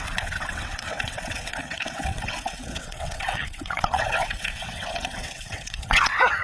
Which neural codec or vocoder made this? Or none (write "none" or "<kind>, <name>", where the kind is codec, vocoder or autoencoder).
vocoder, WaveNeXt